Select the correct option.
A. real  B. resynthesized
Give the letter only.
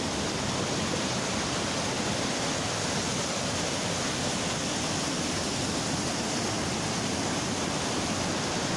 A